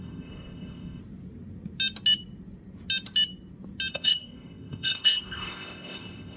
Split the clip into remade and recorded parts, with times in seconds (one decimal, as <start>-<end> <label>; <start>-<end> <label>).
0.0-1.0 remade; 1.0-3.9 recorded; 3.9-6.4 remade